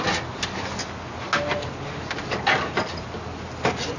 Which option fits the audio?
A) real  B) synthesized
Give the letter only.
A